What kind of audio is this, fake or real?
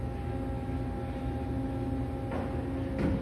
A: real